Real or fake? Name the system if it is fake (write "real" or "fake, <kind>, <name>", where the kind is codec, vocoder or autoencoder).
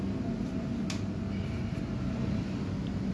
real